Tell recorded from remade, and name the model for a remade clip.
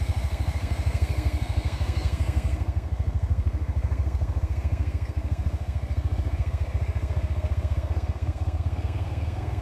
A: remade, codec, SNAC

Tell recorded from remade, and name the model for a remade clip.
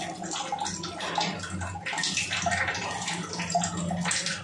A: recorded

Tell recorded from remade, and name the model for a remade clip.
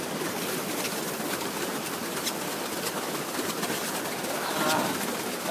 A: recorded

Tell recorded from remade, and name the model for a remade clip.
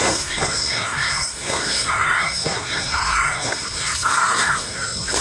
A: remade, codec, SNAC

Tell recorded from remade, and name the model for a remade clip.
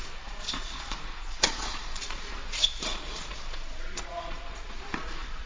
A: remade, vocoder, Vocos